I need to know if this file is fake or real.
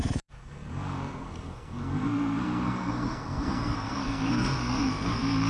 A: fake